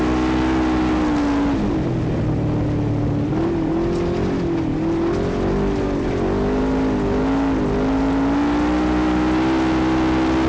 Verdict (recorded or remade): recorded